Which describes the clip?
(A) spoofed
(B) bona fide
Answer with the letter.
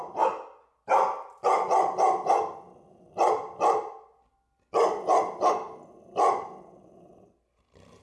B